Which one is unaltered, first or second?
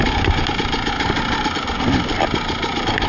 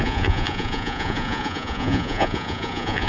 first